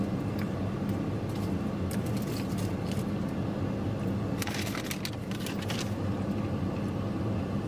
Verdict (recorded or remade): recorded